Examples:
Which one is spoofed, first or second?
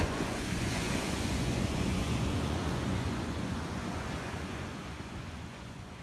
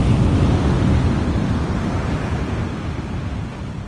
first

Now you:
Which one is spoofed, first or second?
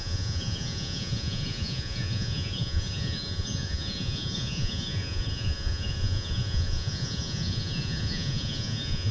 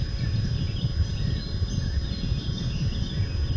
first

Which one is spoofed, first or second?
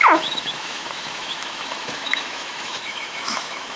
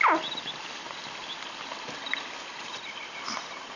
first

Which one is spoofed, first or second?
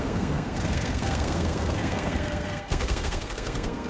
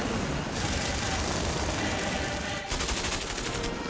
first